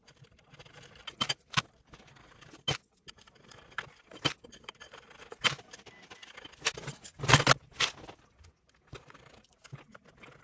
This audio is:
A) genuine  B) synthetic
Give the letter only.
A